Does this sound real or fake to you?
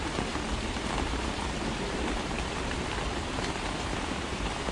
fake